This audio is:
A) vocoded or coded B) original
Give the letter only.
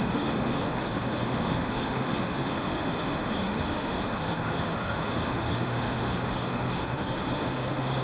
A